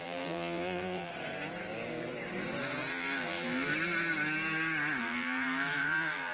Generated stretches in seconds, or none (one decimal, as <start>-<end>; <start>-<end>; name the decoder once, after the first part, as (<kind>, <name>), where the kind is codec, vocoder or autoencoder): 0.0-1.1 (vocoder, BigVGAN v2); 2.9-3.7; 5.0-6.3